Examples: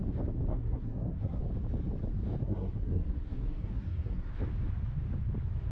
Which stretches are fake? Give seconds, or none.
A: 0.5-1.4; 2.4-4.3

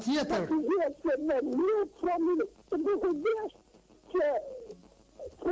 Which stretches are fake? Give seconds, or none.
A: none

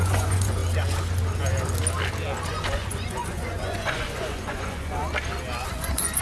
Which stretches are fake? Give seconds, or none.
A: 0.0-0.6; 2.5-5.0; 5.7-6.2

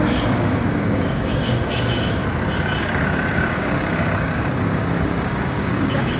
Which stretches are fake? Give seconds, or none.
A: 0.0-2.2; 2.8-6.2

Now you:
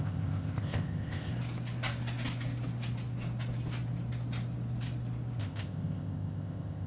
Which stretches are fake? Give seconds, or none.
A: 0.0-1.3; 5.4-6.9